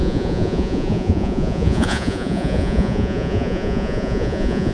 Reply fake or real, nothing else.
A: fake